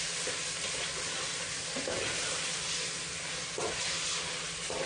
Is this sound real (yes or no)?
yes